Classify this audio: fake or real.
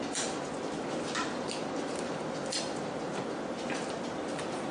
real